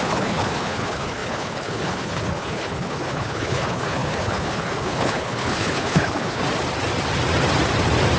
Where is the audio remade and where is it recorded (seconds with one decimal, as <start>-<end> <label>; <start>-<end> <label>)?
0.0-6.4 remade; 6.4-8.2 recorded